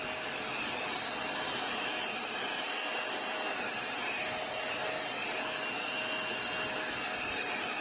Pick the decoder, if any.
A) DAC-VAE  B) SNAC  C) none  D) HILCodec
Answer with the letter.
C